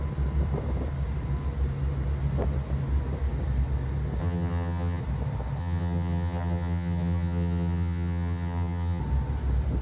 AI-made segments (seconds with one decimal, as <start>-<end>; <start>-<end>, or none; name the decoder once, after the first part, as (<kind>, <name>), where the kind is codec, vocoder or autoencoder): 4.2-5.0 (vocoder, HiFi-GAN); 5.6-9.0